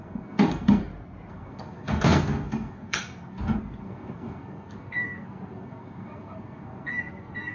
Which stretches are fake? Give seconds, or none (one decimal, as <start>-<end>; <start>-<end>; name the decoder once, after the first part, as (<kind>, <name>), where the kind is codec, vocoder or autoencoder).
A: 0.0-0.8 (codec, SNAC); 1.3-7.5